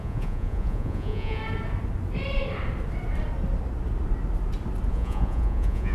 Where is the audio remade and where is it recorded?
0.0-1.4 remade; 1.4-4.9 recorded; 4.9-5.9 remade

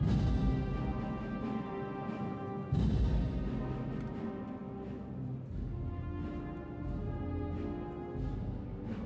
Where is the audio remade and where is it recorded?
0.0-9.1 recorded

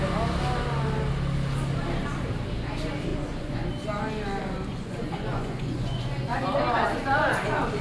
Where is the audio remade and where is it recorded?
0.0-3.1 recorded; 3.1-3.7 remade; 3.7-4.7 recorded; 4.7-6.4 remade; 6.4-7.8 recorded